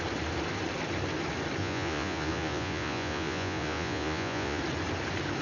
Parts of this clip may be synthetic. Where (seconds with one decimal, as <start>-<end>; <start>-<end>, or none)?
1.6-4.6